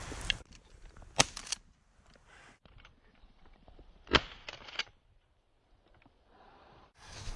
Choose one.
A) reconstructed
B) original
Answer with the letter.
B